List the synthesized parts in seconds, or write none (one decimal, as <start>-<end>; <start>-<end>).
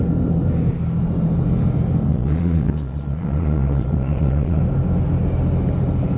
2.1-4.6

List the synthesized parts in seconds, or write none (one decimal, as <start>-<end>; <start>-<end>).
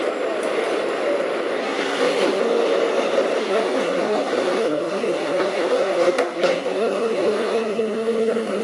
1.6-2.4; 3.4-8.6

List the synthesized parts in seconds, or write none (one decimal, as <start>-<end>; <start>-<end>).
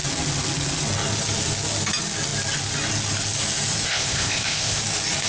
3.9-4.8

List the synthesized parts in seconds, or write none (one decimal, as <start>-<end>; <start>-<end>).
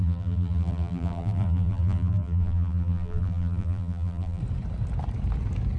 0.0-4.4